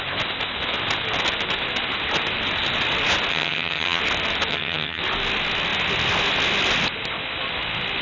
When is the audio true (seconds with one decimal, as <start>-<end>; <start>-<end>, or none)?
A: 0.0-3.3; 4.0-4.5; 5.0-8.0

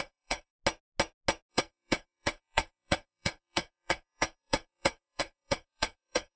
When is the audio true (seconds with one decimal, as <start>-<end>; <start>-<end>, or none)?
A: 0.5-1.5

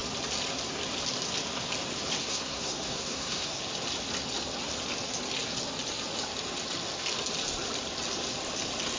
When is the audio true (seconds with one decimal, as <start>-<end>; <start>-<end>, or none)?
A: 0.0-2.1; 3.6-9.0

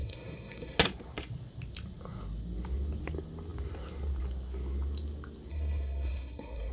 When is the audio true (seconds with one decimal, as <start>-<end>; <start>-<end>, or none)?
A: 0.8-5.5

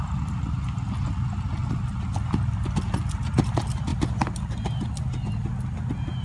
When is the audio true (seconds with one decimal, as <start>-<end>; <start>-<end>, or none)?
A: 0.0-6.2